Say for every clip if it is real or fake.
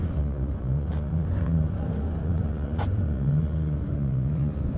fake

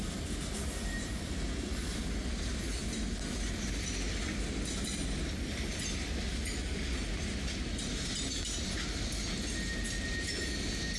real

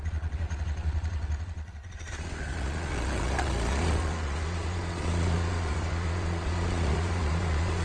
fake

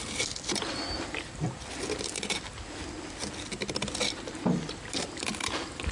real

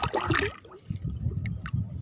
real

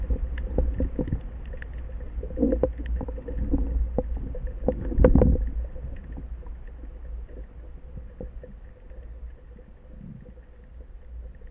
real